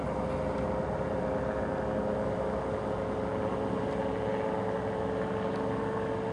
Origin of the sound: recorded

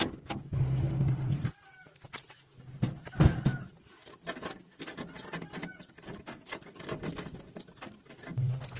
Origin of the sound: recorded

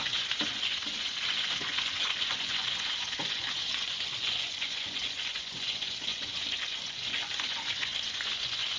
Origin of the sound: remade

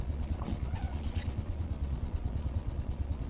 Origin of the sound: remade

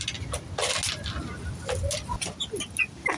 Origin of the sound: recorded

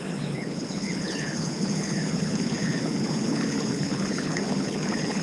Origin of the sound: remade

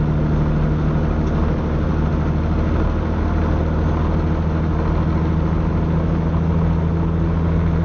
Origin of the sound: recorded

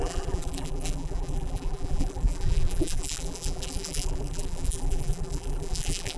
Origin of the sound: remade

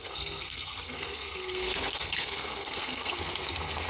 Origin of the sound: remade